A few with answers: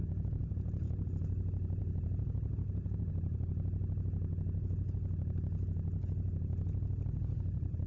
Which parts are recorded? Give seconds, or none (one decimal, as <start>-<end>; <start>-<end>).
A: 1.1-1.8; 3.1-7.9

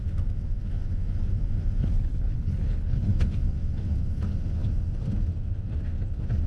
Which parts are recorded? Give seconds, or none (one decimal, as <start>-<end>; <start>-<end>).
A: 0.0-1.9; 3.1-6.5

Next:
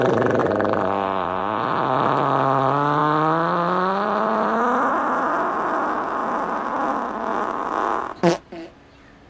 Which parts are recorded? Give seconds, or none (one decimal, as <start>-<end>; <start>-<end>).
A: 0.0-0.4; 1.4-9.3

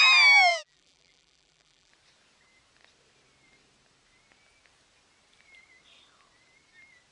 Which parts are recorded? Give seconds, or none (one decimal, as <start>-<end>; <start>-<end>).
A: 0.0-0.5; 1.9-7.1

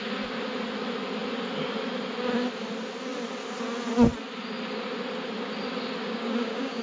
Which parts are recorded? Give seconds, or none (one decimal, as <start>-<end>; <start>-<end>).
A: 0.0-6.0

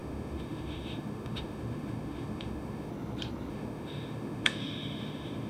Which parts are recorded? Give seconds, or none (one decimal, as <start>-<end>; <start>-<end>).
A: 2.9-3.5